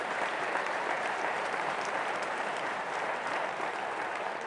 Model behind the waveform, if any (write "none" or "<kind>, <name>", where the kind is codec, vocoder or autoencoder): vocoder, BigVGAN v2